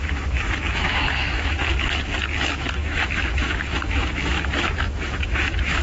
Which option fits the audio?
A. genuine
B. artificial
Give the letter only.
B